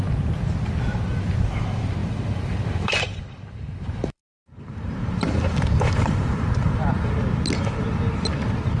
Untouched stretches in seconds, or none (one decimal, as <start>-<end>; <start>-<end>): 0.0-2.0; 7.1-8.8